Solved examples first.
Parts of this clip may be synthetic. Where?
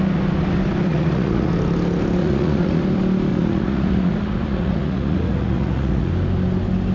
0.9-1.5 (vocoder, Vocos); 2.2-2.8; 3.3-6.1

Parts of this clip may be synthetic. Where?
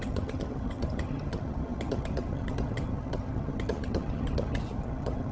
0.0-5.3 (vocoder, HiFi-GAN)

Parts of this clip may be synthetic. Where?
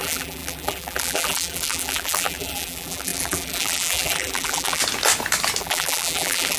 0.0-4.8 (vocoder, BigVGAN v2); 5.6-6.6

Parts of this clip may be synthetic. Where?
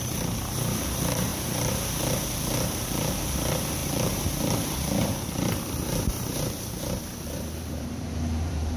0.0-8.8 (vocoder, BigVGAN v2)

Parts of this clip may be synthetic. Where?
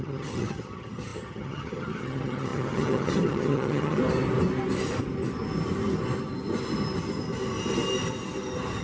0.0-4.0 (vocoder, HiFi-GAN)